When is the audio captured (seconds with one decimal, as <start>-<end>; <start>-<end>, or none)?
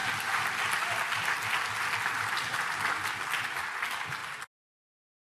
3.1-4.2